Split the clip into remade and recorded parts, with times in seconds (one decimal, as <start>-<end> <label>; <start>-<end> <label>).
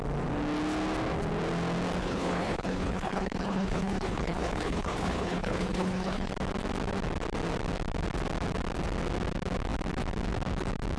0.0-2.0 recorded; 2.0-6.3 remade; 6.3-11.0 recorded